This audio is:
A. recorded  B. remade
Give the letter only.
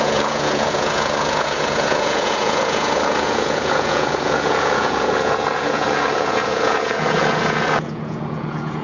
B